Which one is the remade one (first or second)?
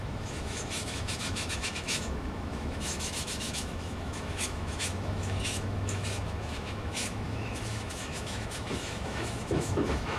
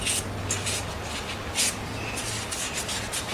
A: first